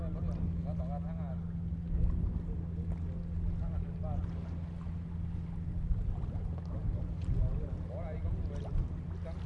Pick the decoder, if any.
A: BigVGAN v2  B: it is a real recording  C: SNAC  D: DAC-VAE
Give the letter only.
B